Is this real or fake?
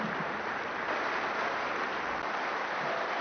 real